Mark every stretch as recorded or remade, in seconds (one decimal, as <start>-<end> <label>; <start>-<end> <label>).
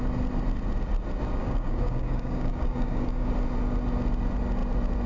0.0-1.4 recorded; 1.4-3.3 remade; 3.3-5.1 recorded